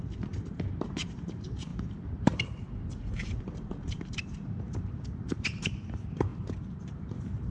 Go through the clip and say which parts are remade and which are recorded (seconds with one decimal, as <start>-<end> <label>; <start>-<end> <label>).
0.0-7.5 remade